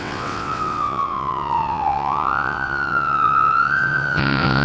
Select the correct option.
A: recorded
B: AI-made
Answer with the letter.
B